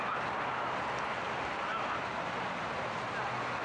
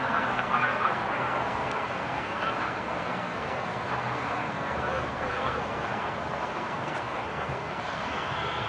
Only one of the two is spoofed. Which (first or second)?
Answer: second